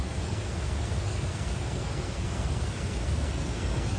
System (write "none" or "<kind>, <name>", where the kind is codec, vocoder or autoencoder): codec, SNAC